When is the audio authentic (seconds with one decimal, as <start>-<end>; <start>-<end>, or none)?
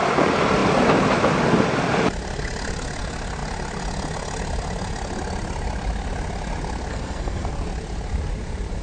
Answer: 0.0-6.9; 7.5-8.8